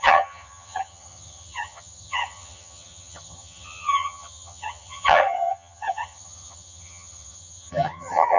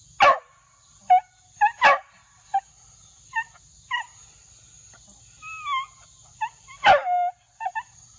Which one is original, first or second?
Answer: second